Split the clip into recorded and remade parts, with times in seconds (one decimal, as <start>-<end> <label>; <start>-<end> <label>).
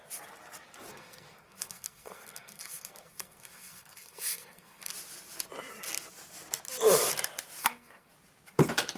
0.0-0.9 recorded; 0.9-4.9 remade; 4.9-7.6 recorded; 7.6-8.1 remade; 8.1-9.0 recorded